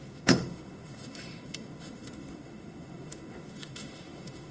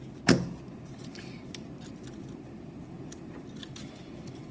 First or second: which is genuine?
second